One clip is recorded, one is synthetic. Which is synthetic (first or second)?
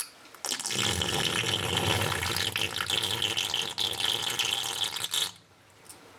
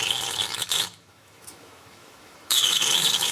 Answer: second